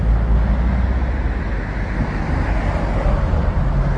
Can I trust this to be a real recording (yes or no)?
yes